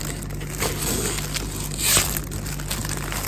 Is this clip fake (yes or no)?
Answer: no